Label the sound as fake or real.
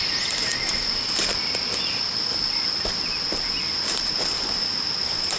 real